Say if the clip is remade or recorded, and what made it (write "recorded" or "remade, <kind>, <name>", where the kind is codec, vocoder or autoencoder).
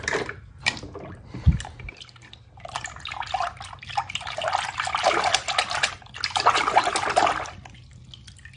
recorded